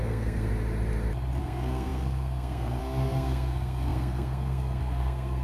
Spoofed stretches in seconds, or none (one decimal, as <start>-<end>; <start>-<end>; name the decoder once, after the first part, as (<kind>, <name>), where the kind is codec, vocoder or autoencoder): 0.0-0.5 (codec, SNAC); 1.4-5.4